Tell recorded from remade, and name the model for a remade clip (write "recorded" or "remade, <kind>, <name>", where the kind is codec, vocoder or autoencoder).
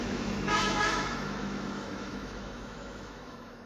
remade, autoencoder, DAC-VAE